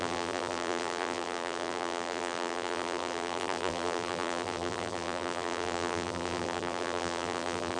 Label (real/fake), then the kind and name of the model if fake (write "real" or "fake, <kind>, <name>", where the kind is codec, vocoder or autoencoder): fake, vocoder, BigVGAN v2